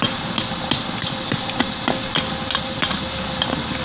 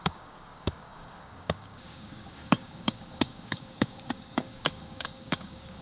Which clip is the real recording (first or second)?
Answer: first